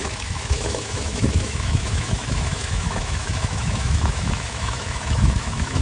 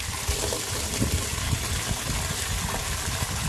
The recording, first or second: second